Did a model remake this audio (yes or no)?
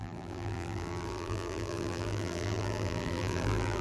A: yes